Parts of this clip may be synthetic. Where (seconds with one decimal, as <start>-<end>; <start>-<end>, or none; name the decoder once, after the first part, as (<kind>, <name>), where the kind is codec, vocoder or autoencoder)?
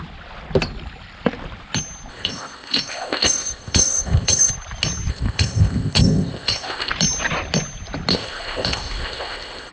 2.1-4.5 (codec, ZipCodec); 5.1-6.9; 8.1-9.7